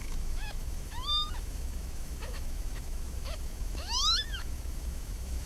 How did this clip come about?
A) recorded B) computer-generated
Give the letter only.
B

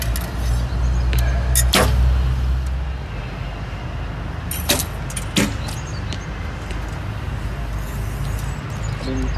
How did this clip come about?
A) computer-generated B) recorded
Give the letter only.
B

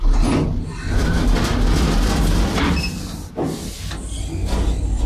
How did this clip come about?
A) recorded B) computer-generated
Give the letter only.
A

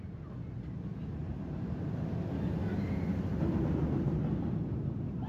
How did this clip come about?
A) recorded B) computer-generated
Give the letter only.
A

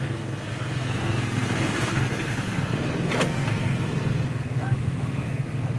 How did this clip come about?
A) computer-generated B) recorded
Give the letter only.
A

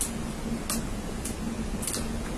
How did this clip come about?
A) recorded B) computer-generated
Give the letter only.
A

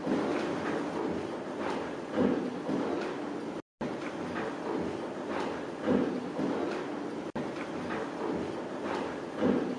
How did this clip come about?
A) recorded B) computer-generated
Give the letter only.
A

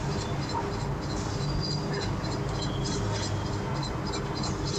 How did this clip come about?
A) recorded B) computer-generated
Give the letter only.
A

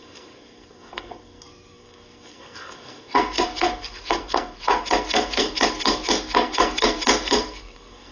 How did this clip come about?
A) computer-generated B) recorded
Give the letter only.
A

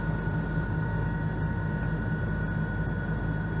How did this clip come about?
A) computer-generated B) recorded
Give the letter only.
B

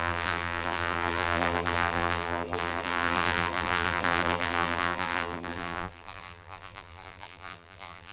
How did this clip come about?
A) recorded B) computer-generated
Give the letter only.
B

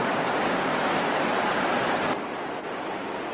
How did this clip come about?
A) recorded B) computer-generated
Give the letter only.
A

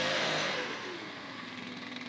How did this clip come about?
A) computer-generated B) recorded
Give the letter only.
A